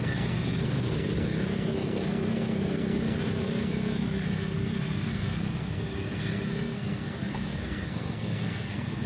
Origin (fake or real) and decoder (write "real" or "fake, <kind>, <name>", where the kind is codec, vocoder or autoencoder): fake, codec, SNAC